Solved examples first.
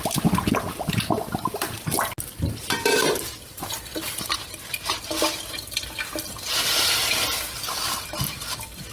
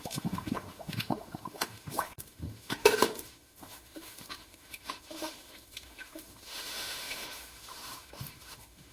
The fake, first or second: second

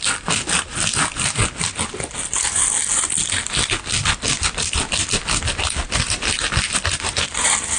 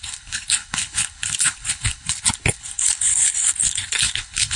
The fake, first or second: second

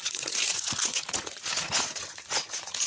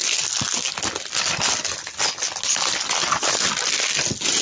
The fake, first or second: first